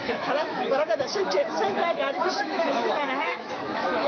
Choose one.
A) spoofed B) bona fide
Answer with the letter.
A